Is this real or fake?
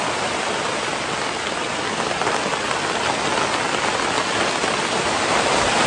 real